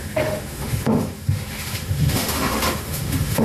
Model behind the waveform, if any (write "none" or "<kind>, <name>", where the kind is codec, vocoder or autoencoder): autoencoder, DAC-VAE